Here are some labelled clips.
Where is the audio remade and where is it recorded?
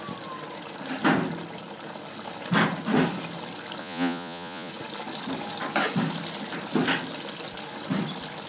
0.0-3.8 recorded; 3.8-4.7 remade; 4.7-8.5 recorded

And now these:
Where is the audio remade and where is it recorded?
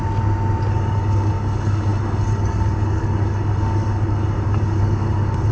0.0-0.7 recorded; 0.7-5.5 remade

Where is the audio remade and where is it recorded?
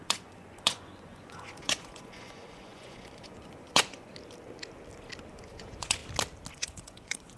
0.0-4.1 remade; 4.1-5.3 recorded; 5.3-6.0 remade; 6.0-6.5 recorded; 6.5-7.4 remade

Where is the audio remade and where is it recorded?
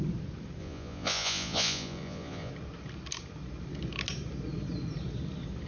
0.0-0.6 recorded; 0.6-2.5 remade; 2.5-5.7 recorded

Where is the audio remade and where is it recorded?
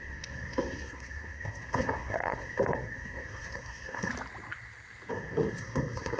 0.0-4.1 remade; 4.1-5.1 recorded; 5.1-6.2 remade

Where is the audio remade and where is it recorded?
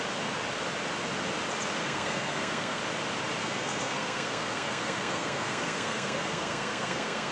0.0-1.8 recorded; 1.8-2.8 remade; 2.8-3.4 recorded; 3.4-7.3 remade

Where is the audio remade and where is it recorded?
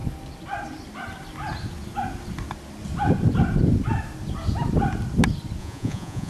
0.0-5.6 recorded; 5.6-6.3 remade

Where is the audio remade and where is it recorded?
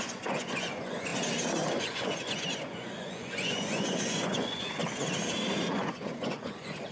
0.0-1.1 remade; 1.1-1.7 recorded; 1.7-4.8 remade; 4.8-5.7 recorded; 5.7-6.9 remade